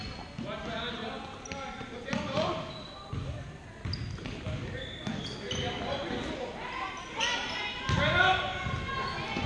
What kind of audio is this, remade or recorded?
recorded